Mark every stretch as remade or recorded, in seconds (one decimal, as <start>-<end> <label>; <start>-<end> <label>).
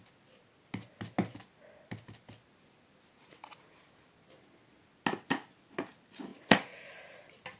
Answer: 0.0-7.6 recorded